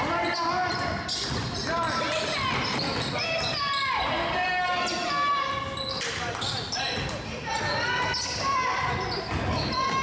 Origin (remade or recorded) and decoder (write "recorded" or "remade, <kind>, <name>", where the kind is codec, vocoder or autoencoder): recorded